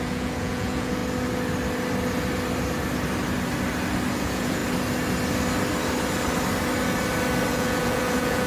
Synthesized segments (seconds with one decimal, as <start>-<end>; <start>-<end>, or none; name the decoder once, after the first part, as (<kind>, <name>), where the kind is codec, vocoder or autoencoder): 0.0-1.0 (vocoder, Vocos); 4.1-4.6; 7.5-8.5